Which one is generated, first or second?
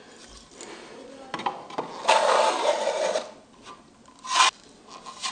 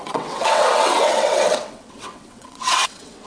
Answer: second